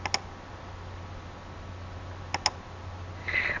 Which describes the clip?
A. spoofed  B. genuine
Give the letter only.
B